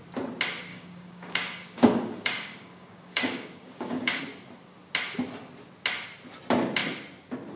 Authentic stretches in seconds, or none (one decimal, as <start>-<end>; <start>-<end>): 0.0-0.7; 4.2-7.6